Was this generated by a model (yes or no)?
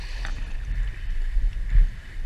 no